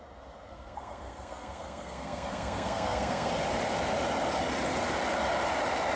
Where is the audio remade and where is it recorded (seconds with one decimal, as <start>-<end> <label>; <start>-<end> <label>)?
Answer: 0.0-0.5 recorded; 0.5-3.3 remade; 3.3-6.0 recorded